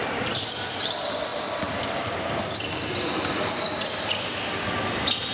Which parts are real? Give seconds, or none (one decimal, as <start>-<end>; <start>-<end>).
0.0-5.3